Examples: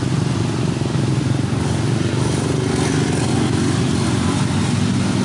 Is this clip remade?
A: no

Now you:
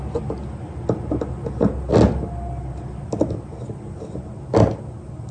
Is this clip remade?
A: no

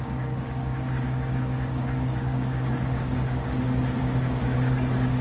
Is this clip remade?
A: yes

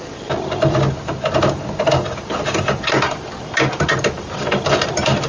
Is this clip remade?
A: no